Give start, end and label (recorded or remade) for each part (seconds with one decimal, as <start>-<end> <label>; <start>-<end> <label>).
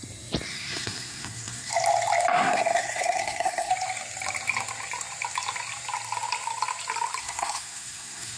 0.0-0.5 recorded; 0.5-1.7 remade; 1.7-2.3 recorded; 2.3-3.7 remade; 3.7-7.2 recorded; 7.2-8.4 remade